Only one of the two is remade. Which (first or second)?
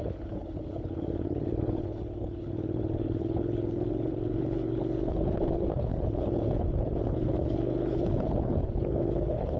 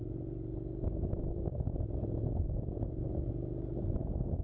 first